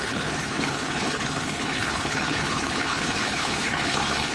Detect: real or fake fake